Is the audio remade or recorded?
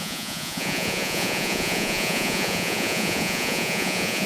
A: remade